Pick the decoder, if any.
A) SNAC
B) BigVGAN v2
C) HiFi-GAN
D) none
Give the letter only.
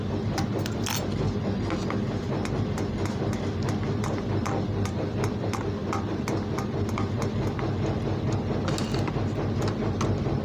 D